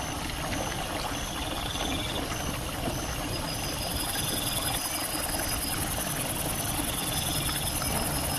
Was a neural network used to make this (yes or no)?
no